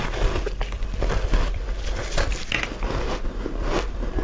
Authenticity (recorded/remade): recorded